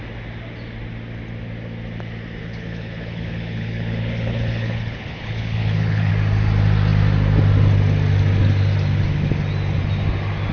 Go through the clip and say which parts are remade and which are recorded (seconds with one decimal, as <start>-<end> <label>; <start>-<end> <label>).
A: 0.0-2.4 recorded; 2.4-6.1 remade; 6.1-10.5 recorded